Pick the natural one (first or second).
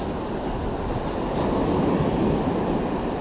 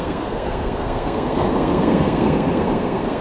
first